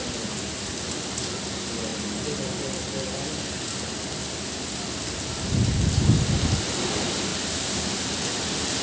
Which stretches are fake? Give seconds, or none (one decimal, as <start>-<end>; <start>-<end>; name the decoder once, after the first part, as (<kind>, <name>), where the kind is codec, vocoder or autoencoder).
none